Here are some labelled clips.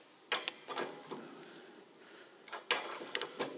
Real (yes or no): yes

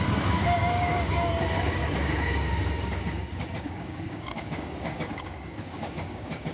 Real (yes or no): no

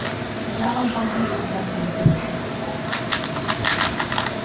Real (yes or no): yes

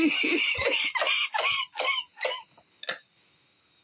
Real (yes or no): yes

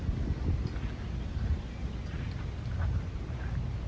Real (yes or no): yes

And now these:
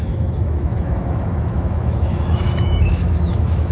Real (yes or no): no